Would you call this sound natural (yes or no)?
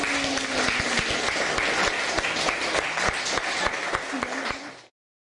yes